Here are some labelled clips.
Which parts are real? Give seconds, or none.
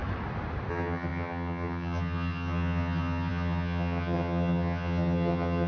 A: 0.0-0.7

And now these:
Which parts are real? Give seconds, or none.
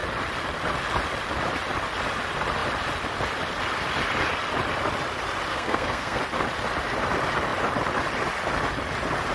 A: 0.0-5.5; 6.2-9.3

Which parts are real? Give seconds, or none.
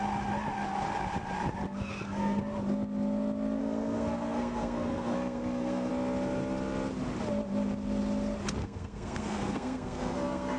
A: 0.0-1.9; 2.4-3.6; 5.9-8.6